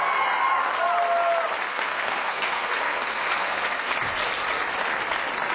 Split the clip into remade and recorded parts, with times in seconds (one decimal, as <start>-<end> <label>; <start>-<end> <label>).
0.0-1.7 recorded; 1.7-3.9 remade; 3.9-5.5 recorded